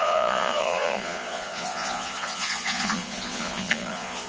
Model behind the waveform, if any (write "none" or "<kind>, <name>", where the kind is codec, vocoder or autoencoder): vocoder, Vocos